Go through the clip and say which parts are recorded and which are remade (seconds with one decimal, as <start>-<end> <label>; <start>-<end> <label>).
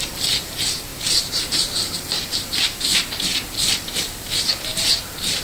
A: 0.0-3.3 remade; 3.3-4.2 recorded; 4.2-5.4 remade